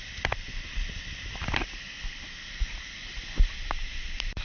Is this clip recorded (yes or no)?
no